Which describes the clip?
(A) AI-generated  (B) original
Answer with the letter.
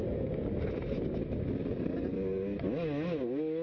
B